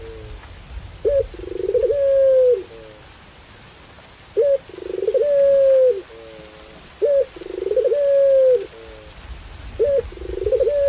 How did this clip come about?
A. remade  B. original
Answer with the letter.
B